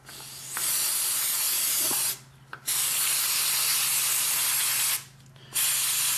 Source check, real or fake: real